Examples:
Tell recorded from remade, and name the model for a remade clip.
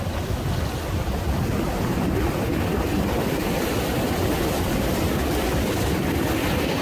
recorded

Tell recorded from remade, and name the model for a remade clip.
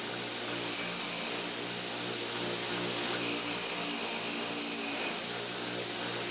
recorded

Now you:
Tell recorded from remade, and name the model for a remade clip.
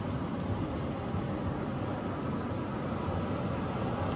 recorded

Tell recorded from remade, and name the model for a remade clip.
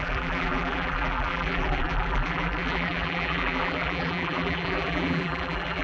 remade, vocoder, BigVGAN v2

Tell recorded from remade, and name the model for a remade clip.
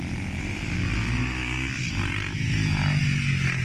recorded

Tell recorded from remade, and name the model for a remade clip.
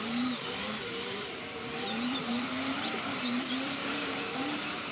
remade, vocoder, BigVGAN v2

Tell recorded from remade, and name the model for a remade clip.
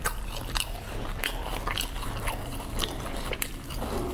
remade, vocoder, BigVGAN v2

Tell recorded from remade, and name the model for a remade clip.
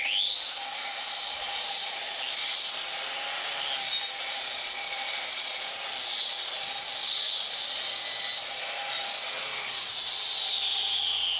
recorded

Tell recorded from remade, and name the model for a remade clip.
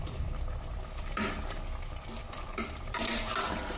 remade, vocoder, BigVGAN v2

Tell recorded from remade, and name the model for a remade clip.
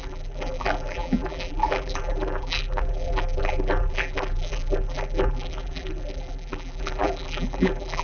remade, vocoder, BigVGAN v2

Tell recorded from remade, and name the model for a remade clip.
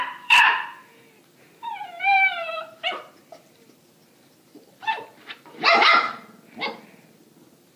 remade, vocoder, BigVGAN v2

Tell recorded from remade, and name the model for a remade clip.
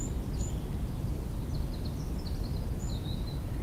recorded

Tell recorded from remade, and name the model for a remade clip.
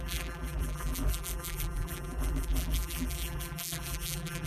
remade, vocoder, BigVGAN v2